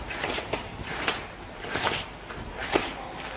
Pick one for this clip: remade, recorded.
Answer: recorded